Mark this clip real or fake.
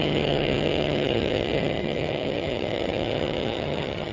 fake